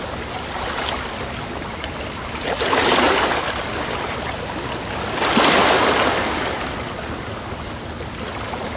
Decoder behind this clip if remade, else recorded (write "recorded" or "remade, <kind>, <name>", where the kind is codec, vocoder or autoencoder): recorded